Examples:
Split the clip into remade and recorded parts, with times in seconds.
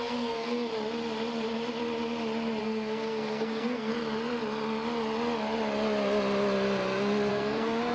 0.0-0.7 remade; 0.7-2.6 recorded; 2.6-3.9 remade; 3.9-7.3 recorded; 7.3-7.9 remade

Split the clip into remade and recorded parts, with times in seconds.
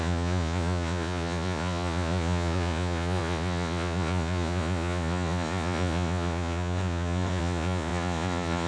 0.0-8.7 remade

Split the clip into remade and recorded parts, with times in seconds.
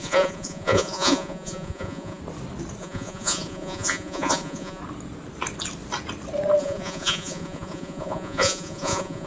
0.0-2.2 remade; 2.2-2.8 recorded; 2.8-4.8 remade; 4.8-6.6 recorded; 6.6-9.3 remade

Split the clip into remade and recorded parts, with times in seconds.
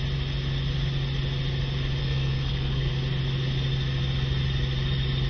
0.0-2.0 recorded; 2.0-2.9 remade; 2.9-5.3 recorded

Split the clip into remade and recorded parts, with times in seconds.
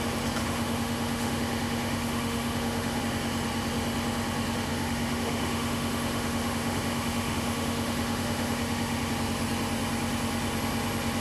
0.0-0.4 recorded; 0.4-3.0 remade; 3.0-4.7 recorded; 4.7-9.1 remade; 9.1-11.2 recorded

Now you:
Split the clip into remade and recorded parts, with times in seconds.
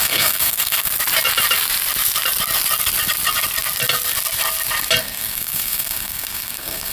0.0-0.9 remade; 0.9-5.0 recorded; 5.0-6.9 remade